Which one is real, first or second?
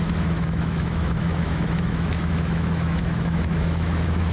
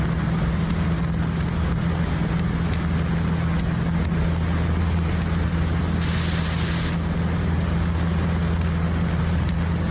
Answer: second